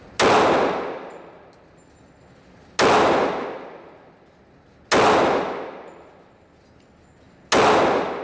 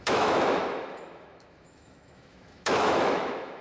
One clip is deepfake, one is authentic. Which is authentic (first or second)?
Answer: first